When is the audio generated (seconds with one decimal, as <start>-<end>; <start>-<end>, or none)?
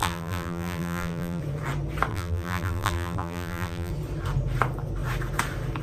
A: 0.0-1.4; 2.1-3.9